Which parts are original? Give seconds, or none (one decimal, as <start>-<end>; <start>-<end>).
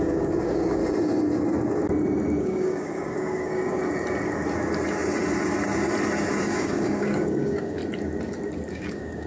0.8-2.4; 3.8-6.4; 7.8-8.7